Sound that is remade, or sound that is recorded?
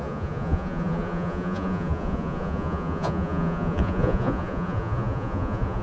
remade